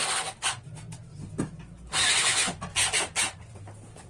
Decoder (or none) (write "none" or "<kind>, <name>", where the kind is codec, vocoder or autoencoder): none